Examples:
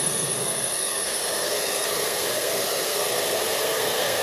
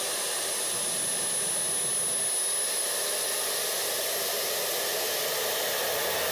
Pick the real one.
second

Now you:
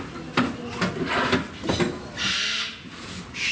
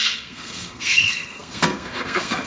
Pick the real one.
first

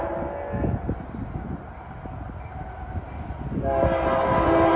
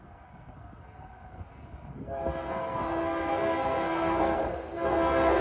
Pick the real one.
first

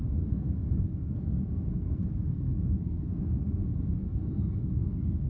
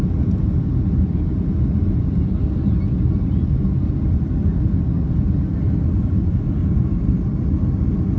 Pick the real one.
second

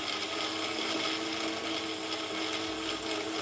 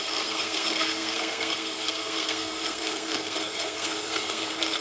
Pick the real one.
first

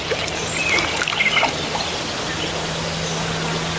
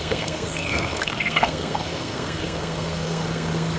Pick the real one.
first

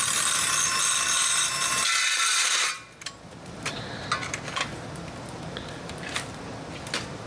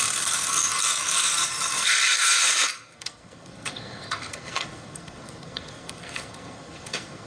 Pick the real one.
first